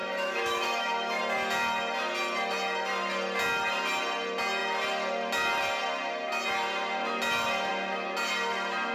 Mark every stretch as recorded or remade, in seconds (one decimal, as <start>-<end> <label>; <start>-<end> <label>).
0.0-1.2 remade; 1.2-8.9 recorded